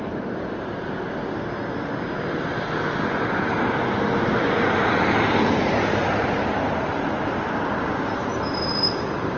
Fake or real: real